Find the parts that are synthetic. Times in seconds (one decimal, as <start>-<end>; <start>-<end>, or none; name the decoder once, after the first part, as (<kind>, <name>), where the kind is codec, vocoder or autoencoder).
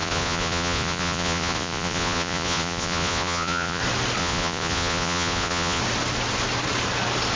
0.0-3.8 (vocoder, Vocos); 4.2-5.8